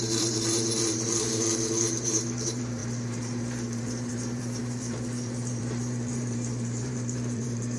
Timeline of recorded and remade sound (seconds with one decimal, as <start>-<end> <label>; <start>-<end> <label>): 0.0-7.8 remade